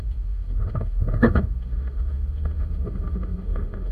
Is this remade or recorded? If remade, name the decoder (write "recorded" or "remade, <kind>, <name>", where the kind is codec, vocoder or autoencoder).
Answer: remade, autoencoder, DAC-VAE